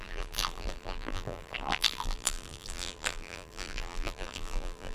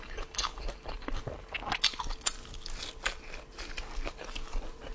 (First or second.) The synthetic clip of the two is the first